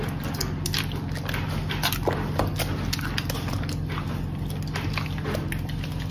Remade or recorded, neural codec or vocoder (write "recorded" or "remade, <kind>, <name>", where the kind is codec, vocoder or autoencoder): recorded